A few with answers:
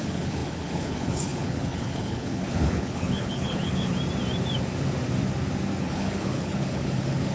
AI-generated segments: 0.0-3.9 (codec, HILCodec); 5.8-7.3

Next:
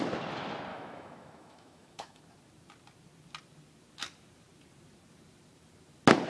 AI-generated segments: 0.7-2.2 (autoencoder, DAC-VAE)

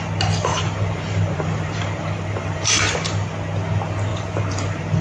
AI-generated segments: 0.5-2.8 (vocoder, BigVGAN v2); 4.1-5.0

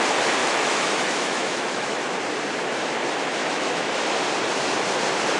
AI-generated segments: 0.4-2.0 (autoencoder, DAC-VAE); 3.4-3.9

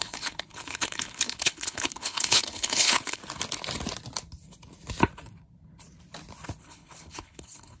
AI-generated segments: 0.0-3.2 (codec, HILCodec); 6.6-7.8

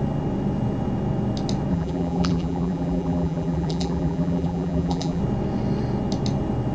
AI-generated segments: 1.7-5.2 (vocoder, BigVGAN v2)

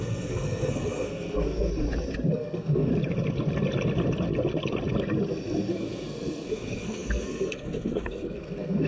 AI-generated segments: 0.0-1.7 (codec, SNAC); 2.3-2.9; 5.7-8.9

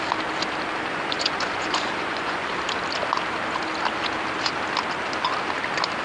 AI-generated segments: 0.9-2.5 (vocoder, Vocos)